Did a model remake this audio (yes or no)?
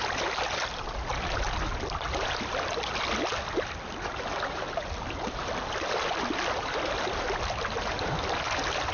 no